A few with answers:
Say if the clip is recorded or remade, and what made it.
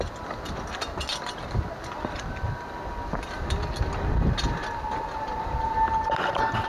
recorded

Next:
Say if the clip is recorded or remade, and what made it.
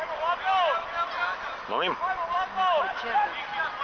recorded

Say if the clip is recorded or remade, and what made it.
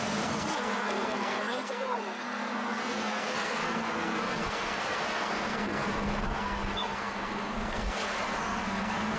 remade, codec, SNAC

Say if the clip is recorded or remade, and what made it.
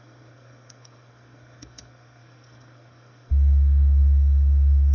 remade, codec, SNAC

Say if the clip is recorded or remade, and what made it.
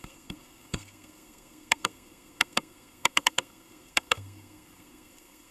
remade, codec, SNAC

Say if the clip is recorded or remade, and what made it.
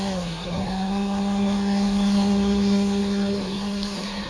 remade, codec, SNAC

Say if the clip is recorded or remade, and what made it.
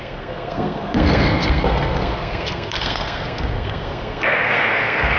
remade, codec, SNAC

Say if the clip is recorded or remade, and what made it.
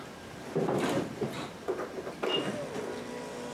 recorded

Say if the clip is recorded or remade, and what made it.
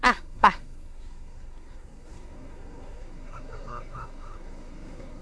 remade, codec, SNAC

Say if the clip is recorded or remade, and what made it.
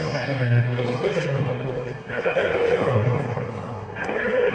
remade, codec, SNAC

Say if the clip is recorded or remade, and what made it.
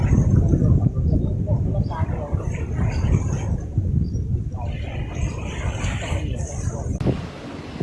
recorded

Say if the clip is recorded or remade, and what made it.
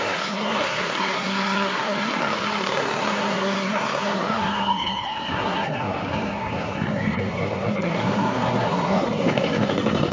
remade, codec, SNAC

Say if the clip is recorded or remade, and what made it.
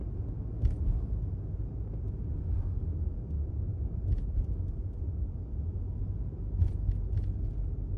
recorded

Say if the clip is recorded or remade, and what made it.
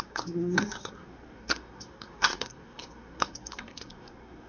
remade, codec, SNAC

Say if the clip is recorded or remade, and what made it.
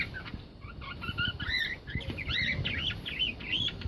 recorded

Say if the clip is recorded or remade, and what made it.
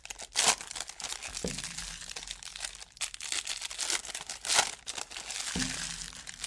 recorded